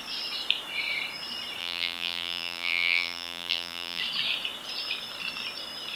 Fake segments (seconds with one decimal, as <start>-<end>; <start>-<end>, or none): 1.6-4.0